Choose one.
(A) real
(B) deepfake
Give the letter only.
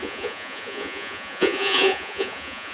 B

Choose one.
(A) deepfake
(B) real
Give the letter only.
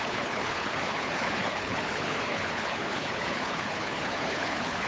A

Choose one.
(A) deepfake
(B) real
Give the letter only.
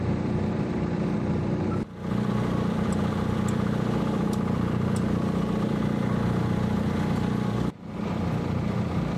A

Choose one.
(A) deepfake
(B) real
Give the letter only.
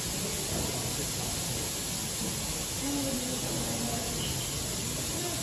B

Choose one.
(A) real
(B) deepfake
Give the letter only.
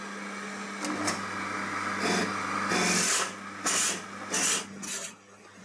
A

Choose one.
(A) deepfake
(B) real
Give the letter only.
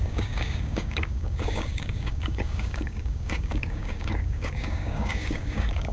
A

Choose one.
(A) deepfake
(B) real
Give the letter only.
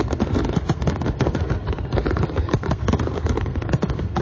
A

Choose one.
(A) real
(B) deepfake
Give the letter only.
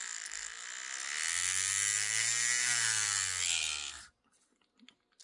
A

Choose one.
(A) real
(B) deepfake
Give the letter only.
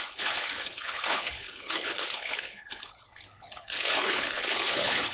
B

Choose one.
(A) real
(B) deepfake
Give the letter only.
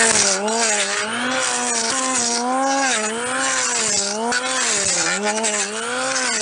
A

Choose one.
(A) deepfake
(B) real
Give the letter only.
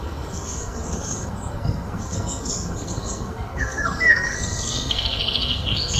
A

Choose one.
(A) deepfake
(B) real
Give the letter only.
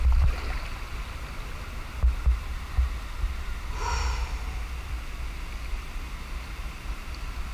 B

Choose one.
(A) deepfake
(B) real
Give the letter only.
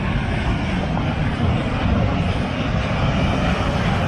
B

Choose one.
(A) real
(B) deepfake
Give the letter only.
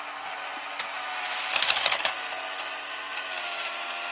A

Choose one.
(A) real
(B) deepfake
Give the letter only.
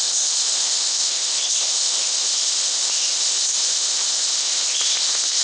B